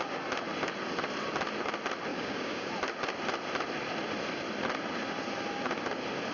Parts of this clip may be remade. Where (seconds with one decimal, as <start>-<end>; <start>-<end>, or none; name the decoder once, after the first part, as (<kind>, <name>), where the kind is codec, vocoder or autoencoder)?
2.1-2.7 (codec, DAC)